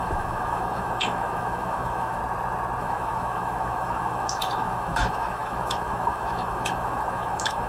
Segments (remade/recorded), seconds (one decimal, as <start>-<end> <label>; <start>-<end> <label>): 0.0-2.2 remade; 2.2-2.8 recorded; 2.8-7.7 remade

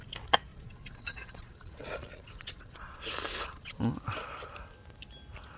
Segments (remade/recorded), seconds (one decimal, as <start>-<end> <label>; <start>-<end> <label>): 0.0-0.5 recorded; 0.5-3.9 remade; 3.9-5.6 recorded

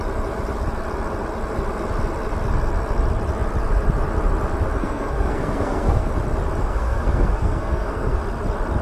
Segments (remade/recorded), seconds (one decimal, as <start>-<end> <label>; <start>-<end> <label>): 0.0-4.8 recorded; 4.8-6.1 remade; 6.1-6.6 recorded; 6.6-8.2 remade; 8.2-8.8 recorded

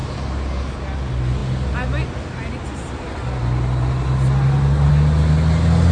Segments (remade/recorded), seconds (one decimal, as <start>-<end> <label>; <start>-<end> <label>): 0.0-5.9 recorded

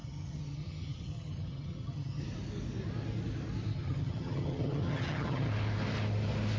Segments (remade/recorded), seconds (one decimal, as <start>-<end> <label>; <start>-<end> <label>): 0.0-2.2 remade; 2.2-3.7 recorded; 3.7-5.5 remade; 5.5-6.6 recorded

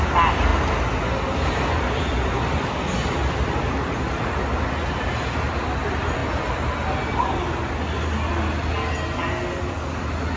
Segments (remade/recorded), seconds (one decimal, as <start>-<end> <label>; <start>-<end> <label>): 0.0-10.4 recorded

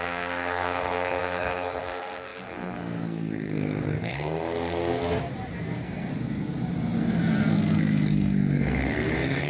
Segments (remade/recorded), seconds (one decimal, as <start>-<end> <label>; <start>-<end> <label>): 0.0-5.0 remade; 5.0-5.6 recorded; 5.6-6.1 remade; 6.1-7.0 recorded; 7.0-9.5 remade

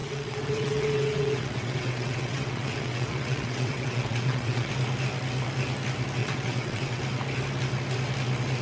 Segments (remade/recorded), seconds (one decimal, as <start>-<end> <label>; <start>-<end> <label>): 0.0-4.7 remade; 4.7-6.2 recorded; 6.2-7.0 remade; 7.0-8.6 recorded